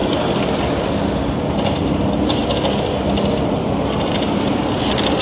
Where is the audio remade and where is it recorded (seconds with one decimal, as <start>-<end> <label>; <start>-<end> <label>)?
0.0-5.2 recorded

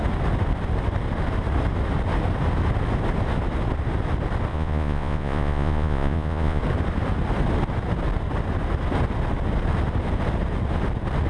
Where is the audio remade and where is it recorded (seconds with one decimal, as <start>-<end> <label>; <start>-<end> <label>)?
0.0-4.5 recorded; 4.5-6.6 remade; 6.6-11.3 recorded

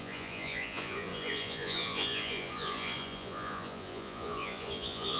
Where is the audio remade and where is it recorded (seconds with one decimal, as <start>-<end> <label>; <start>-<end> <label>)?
0.0-5.2 remade

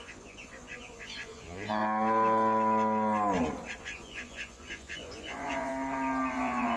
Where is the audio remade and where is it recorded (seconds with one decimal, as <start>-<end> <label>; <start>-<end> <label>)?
0.0-1.8 remade; 1.8-3.8 recorded; 3.8-5.7 remade; 5.7-6.3 recorded; 6.3-6.8 remade

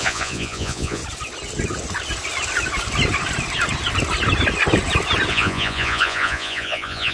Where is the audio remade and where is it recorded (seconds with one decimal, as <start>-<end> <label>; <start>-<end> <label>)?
0.0-1.0 remade; 1.0-5.3 recorded; 5.3-7.1 remade